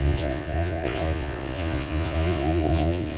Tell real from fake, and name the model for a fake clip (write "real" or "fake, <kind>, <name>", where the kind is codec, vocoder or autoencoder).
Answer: fake, vocoder, Vocos